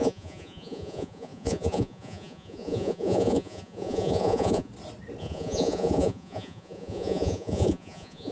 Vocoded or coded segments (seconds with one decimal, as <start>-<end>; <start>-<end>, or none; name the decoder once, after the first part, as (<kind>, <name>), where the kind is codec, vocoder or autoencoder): 0.0-4.7 (vocoder, Vocos); 5.2-8.3